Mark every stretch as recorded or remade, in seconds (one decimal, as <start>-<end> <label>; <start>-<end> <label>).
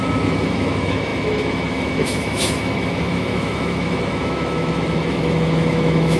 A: 0.0-6.2 remade